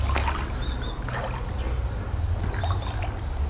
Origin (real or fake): real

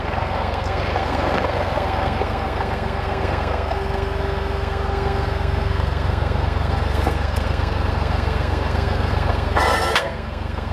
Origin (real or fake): fake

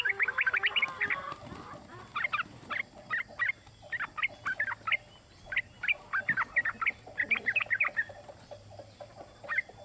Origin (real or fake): real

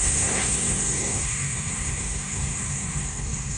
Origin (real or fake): fake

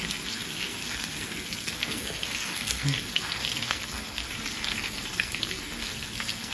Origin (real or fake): fake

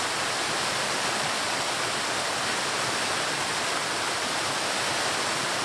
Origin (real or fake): real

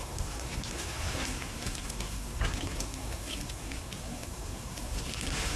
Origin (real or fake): fake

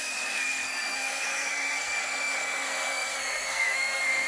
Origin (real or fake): fake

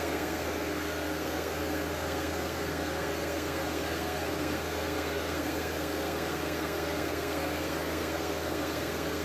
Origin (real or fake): fake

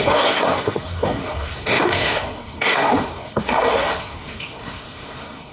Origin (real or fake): fake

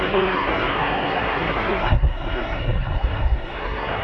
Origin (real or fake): fake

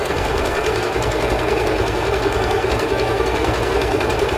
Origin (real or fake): fake